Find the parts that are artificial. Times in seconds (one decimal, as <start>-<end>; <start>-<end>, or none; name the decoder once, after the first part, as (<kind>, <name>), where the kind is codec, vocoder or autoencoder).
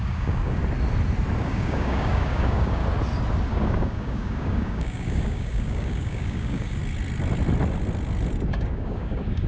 0.0-0.6 (codec, DAC); 1.5-2.8; 3.5-6.8; 8.5-9.5